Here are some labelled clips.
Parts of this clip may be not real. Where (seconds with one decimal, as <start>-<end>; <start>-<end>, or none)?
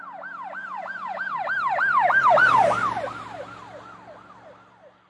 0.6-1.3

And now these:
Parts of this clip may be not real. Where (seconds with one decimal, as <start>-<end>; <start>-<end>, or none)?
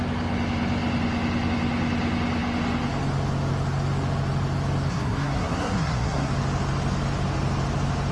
4.9-6.3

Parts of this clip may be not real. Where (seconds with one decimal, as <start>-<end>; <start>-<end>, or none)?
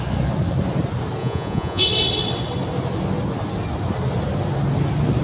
1.2-1.8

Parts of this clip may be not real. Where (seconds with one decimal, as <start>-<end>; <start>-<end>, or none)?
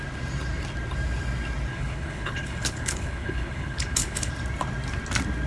1.7-4.3